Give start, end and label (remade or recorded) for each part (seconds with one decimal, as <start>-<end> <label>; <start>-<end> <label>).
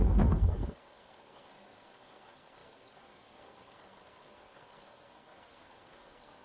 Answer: 0.0-6.4 remade